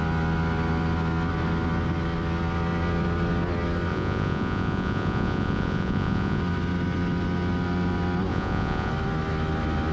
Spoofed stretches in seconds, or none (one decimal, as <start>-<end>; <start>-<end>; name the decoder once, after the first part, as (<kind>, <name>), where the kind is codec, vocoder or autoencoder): 3.9-6.4 (vocoder, Vocos); 8.3-8.9